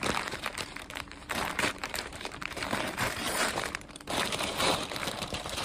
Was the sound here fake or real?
fake